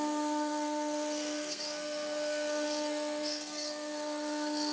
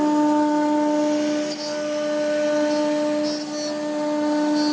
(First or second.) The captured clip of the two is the second